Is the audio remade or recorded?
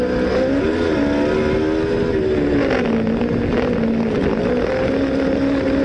recorded